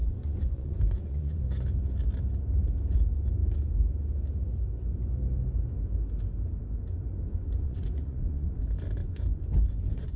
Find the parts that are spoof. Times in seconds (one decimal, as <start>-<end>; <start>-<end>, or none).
0.0-1.4; 7.3-8.6; 9.0-10.2